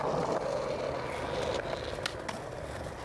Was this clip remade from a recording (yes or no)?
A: no